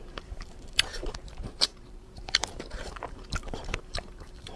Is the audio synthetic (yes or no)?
yes